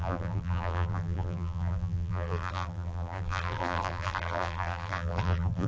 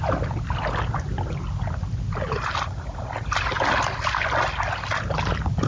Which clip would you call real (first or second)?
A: second